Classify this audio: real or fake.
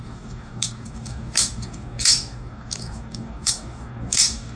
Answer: fake